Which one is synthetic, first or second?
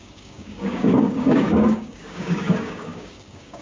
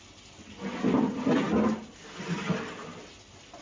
first